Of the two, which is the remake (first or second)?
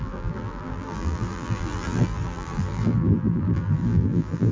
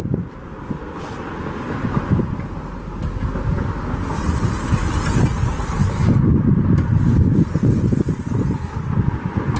first